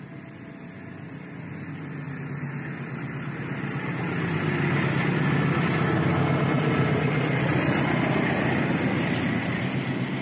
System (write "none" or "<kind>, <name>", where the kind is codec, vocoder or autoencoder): none